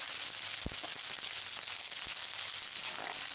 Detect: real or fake real